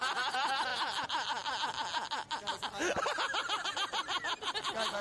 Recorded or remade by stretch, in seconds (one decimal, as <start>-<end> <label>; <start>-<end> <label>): 0.0-5.0 recorded